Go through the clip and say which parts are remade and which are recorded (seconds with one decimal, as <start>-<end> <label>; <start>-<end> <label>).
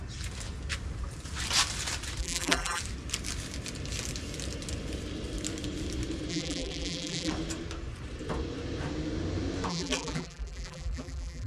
0.0-2.2 recorded; 2.2-2.8 remade; 2.8-6.3 recorded; 6.3-7.3 remade; 7.3-9.7 recorded; 9.7-11.5 remade